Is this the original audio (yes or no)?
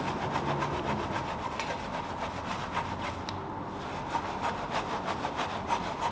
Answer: yes